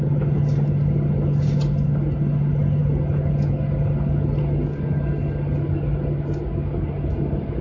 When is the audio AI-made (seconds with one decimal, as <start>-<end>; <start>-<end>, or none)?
none